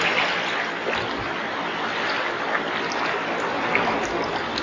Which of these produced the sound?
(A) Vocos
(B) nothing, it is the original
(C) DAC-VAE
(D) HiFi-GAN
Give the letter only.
B